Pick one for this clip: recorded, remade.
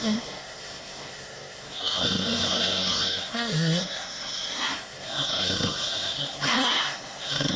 remade